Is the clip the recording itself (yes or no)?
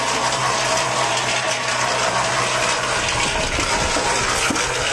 yes